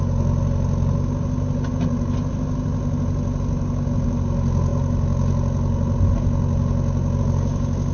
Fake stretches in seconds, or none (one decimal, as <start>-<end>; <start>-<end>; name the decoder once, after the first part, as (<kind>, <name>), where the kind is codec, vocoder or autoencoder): none